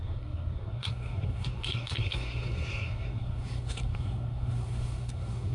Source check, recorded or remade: remade